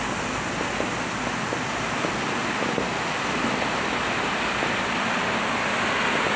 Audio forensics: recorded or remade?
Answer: recorded